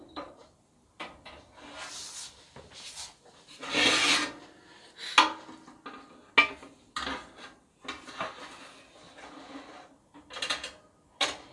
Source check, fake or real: real